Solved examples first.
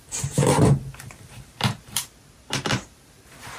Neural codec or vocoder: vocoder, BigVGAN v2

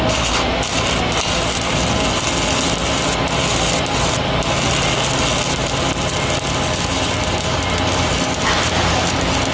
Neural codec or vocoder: none